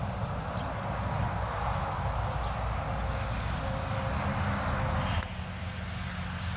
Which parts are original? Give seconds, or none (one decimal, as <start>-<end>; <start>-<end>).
0.0-6.6

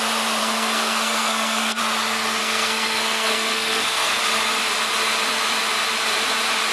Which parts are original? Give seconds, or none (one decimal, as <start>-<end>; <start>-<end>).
0.0-0.4; 1.8-2.4; 4.2-6.7

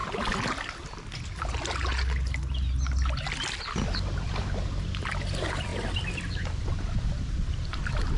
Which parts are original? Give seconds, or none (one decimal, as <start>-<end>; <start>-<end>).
0.0-3.6

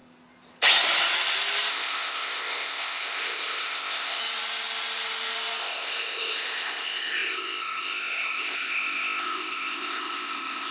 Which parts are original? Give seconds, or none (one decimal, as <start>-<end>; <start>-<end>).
0.0-1.7; 4.2-5.6